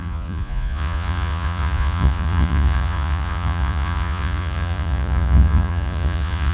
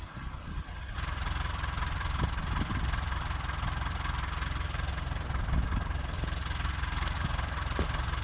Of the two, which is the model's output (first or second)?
first